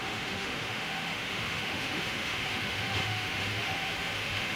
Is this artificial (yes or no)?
yes